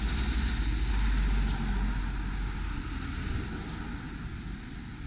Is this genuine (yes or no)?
yes